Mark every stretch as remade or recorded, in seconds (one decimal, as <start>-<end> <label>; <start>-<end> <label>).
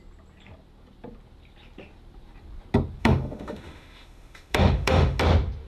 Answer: 0.0-3.0 recorded; 3.0-5.2 remade; 5.2-5.7 recorded